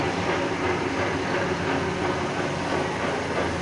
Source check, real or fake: real